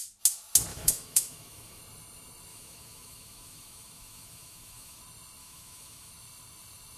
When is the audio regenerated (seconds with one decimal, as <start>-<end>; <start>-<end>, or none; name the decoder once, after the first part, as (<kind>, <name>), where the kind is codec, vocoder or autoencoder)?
0.7-1.8 (autoencoder, DAC-VAE); 2.5-5.0; 5.4-6.1